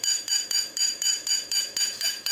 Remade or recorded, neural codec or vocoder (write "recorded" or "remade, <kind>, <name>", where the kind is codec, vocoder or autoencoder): remade, autoencoder, DAC-VAE